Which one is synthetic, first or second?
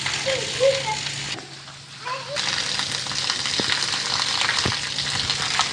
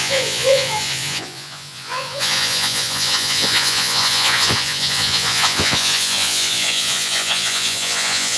second